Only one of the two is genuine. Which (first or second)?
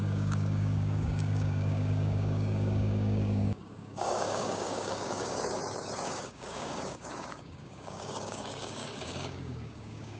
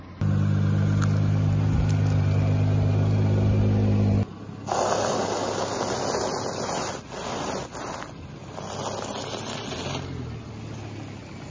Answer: second